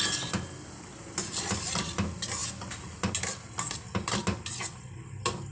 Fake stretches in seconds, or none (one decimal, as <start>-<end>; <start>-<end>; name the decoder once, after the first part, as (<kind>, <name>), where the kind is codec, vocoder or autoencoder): none